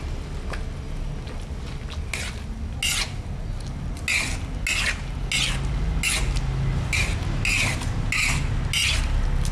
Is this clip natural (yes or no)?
yes